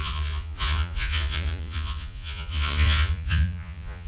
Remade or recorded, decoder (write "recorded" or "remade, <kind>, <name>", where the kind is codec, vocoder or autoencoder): remade, vocoder, Vocos